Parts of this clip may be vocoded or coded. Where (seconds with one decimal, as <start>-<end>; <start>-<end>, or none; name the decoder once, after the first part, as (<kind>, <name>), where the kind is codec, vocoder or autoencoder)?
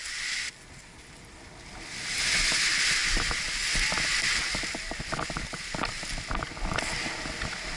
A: none